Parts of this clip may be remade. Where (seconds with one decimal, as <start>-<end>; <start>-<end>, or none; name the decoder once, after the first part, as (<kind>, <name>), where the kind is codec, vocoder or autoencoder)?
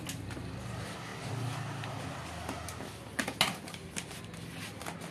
none